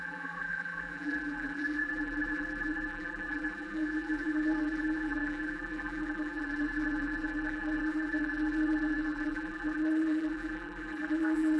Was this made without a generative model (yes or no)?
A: no